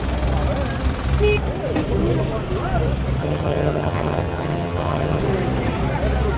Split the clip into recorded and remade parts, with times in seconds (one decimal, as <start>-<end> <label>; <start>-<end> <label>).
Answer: 0.0-3.2 recorded; 3.2-5.2 remade; 5.2-6.4 recorded